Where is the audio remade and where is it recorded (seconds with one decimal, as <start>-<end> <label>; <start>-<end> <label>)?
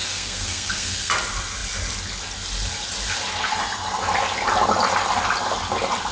0.0-1.1 remade; 1.1-6.1 recorded